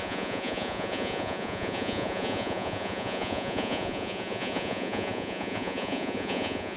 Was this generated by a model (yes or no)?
yes